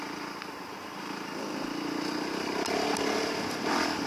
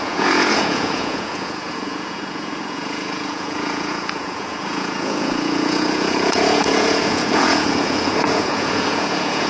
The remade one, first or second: second